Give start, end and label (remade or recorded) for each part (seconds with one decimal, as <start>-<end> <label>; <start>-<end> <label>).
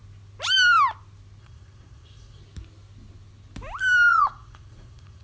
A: 0.0-1.4 recorded; 1.4-2.4 remade; 2.4-4.1 recorded; 4.1-5.2 remade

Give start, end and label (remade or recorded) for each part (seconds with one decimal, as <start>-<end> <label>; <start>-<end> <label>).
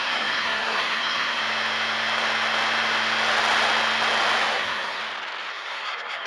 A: 0.0-1.4 remade; 1.4-4.5 recorded; 4.5-5.0 remade; 5.0-5.5 recorded; 5.5-6.3 remade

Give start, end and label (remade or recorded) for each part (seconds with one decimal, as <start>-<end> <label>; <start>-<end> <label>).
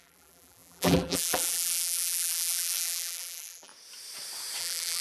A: 0.0-3.7 remade; 3.7-4.6 recorded; 4.6-5.0 remade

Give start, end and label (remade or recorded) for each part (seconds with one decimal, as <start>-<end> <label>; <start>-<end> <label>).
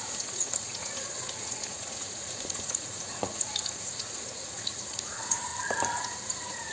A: 0.0-5.5 remade; 5.5-6.0 recorded; 6.0-6.7 remade